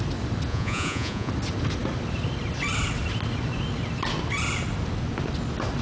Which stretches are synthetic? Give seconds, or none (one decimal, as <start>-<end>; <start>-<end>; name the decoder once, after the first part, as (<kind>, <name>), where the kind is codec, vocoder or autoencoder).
0.5-1.3 (vocoder, Vocos)